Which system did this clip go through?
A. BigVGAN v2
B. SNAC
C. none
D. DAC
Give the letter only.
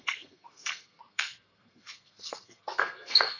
B